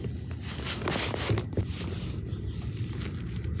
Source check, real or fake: real